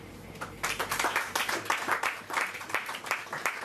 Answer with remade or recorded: remade